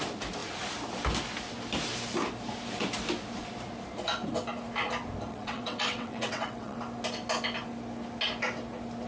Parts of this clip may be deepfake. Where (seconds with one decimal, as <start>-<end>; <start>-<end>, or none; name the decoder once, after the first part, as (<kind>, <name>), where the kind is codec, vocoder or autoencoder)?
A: 5.3-6.8 (vocoder, WaveNeXt)